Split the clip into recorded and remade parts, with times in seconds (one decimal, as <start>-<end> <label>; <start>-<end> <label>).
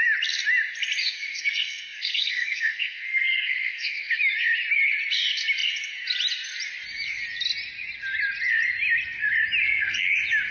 0.0-1.0 recorded; 1.0-4.1 remade; 4.1-9.6 recorded; 9.6-10.1 remade; 10.1-10.5 recorded